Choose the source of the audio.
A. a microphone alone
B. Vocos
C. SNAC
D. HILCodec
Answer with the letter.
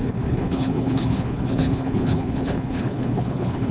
D